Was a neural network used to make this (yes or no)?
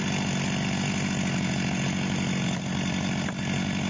no